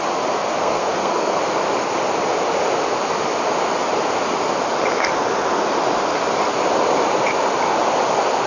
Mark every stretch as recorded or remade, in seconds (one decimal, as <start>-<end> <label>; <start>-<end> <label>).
0.0-0.6 recorded; 0.6-1.4 remade; 1.4-8.5 recorded